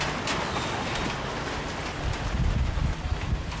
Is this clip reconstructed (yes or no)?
no